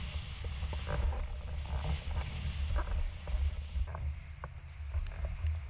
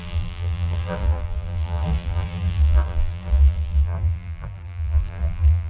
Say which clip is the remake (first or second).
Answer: second